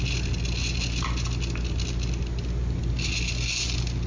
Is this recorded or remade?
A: recorded